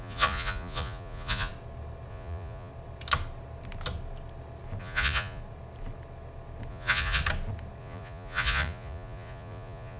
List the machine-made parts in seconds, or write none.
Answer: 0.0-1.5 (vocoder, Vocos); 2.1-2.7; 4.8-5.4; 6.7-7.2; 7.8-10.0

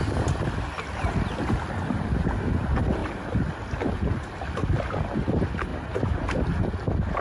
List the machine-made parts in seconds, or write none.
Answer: none

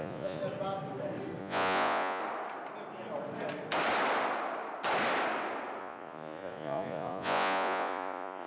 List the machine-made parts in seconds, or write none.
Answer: 0.0-0.4 (vocoder, Vocos); 1.4-2.2; 5.8-8.5

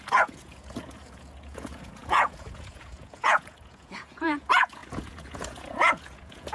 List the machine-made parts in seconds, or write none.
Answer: 0.0-6.5 (vocoder, Vocos)

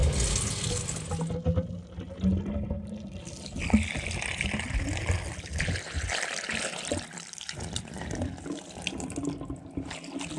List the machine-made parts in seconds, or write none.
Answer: none